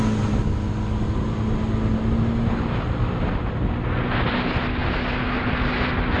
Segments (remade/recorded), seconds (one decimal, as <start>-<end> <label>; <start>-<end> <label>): 0.0-6.2 recorded